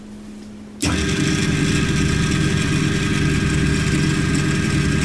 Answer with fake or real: real